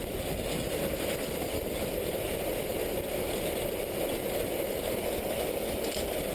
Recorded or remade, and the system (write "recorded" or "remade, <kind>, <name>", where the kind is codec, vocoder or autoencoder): recorded